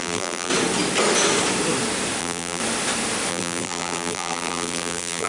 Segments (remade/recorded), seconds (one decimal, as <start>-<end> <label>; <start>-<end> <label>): 0.0-0.5 remade; 0.5-2.2 recorded; 2.2-2.6 remade; 2.6-3.3 recorded; 3.3-5.3 remade